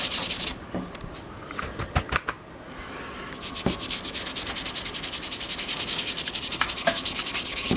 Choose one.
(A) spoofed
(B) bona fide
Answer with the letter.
B